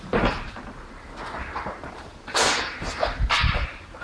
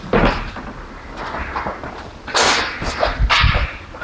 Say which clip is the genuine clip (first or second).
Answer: second